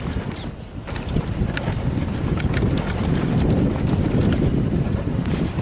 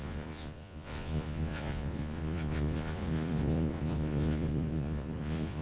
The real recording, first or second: first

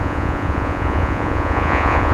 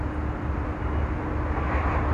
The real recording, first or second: second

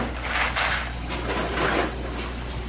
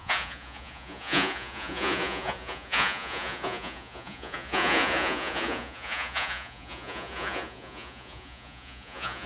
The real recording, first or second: first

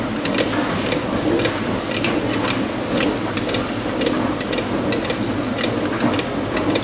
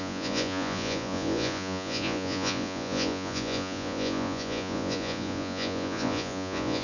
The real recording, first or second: first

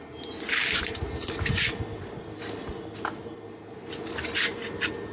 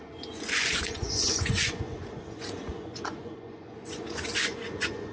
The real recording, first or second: first